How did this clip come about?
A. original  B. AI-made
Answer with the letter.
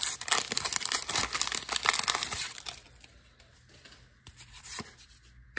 A